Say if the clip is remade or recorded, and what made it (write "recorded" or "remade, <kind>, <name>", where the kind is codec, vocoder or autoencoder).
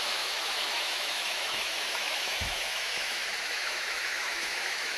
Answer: remade, autoencoder, DAC-VAE